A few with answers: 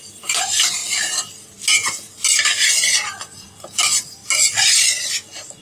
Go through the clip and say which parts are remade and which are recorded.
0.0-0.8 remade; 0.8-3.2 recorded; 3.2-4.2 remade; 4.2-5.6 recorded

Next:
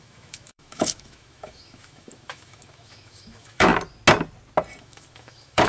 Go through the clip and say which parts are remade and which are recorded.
0.0-3.7 remade; 3.7-4.8 recorded; 4.8-5.7 remade

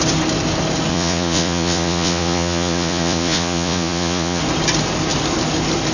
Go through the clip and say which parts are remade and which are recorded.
0.0-0.9 recorded; 0.9-4.4 remade; 4.4-5.9 recorded

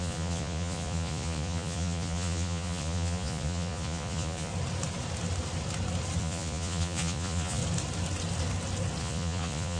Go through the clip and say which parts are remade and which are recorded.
0.0-4.5 remade; 4.5-6.2 recorded; 6.2-7.6 remade; 7.6-9.0 recorded; 9.0-9.8 remade

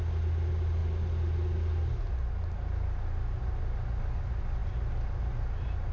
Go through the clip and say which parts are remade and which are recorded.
0.0-5.9 recorded

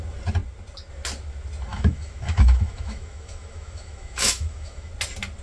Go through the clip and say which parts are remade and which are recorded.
0.0-1.7 recorded; 1.7-4.9 remade; 4.9-5.4 recorded

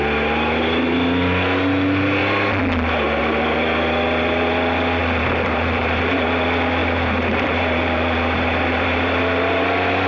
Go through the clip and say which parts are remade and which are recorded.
0.0-5.0 recorded; 5.0-6.0 remade; 6.0-6.8 recorded; 6.8-9.2 remade; 9.2-10.1 recorded